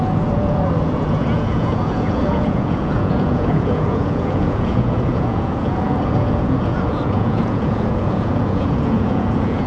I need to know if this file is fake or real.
fake